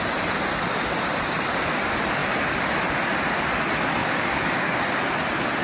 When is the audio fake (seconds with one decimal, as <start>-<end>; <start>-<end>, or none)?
4.0-4.8